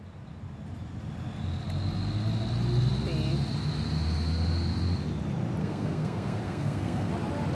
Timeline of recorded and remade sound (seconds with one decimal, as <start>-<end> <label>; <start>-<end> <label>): 0.0-5.6 recorded; 5.6-7.1 remade; 7.1-7.5 recorded